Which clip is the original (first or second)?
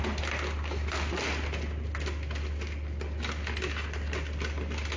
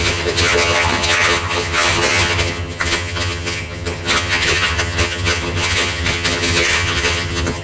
first